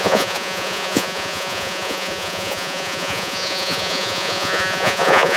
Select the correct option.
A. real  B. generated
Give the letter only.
B